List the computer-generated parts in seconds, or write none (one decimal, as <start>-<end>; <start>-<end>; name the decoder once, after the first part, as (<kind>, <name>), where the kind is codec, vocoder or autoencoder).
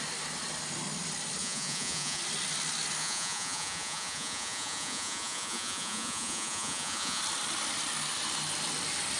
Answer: 1.4-2.2 (vocoder, Vocos); 3.0-7.2